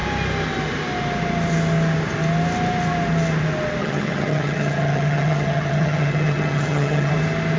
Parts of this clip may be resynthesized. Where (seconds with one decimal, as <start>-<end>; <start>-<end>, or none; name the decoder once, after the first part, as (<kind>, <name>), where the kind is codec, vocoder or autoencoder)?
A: 3.8-7.1 (vocoder, HiFi-GAN)